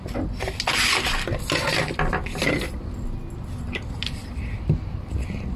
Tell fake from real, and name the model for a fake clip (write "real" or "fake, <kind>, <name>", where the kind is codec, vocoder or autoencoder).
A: real